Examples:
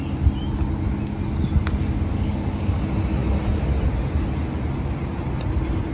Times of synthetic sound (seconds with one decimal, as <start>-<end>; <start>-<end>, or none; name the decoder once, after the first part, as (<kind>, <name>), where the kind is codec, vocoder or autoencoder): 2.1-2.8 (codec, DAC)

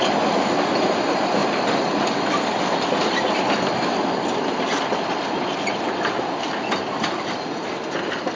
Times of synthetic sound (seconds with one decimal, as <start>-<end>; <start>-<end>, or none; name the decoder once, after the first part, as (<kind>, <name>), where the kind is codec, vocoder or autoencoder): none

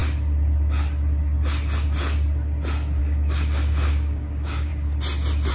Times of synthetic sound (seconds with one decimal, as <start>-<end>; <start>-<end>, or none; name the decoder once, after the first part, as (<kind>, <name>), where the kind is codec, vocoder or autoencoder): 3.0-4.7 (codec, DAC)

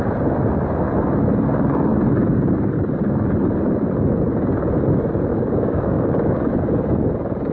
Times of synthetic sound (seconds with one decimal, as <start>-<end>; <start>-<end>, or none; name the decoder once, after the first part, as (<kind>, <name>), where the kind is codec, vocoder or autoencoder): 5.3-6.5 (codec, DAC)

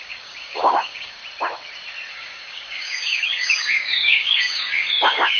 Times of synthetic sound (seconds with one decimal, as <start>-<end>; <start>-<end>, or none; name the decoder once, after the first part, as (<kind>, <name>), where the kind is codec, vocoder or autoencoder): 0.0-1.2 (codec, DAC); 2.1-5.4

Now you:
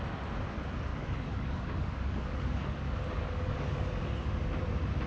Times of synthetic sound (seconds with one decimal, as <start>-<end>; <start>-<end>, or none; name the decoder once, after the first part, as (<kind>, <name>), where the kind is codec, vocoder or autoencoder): 0.9-4.0 (codec, DAC)

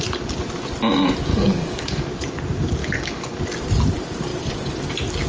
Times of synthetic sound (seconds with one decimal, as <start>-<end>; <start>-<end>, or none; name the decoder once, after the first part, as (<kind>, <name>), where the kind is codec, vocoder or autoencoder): 1.3-2.1 (codec, DAC); 2.8-3.4

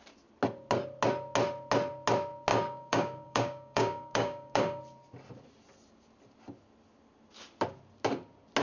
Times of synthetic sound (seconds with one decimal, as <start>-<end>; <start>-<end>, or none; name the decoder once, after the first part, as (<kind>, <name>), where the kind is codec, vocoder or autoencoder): 2.5-4.8 (codec, DAC)